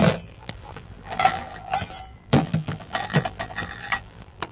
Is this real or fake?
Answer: fake